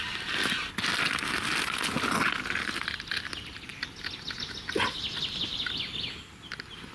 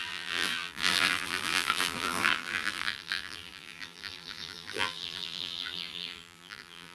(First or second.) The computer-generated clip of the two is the second